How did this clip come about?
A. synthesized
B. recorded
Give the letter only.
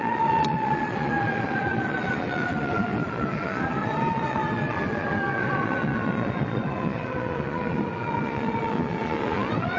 A